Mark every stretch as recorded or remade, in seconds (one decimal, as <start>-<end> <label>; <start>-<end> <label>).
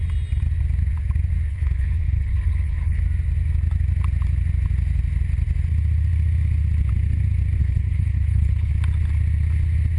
0.0-1.5 recorded; 1.5-3.0 remade; 3.0-7.6 recorded; 7.6-8.7 remade; 8.7-10.0 recorded